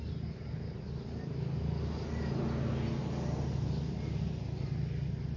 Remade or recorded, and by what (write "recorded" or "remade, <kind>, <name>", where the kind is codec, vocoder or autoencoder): recorded